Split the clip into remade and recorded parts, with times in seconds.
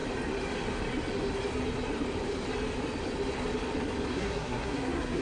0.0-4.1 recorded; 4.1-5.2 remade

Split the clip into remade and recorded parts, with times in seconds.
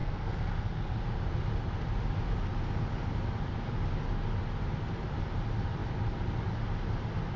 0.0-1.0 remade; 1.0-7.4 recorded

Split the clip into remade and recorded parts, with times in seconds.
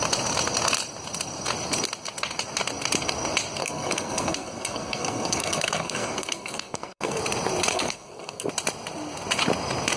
0.0-3.6 recorded; 3.6-7.2 remade; 7.2-7.7 recorded; 7.7-8.5 remade; 8.5-10.0 recorded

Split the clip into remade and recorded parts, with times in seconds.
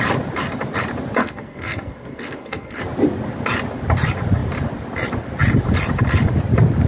0.0-1.2 recorded; 1.2-2.8 remade; 2.8-6.9 recorded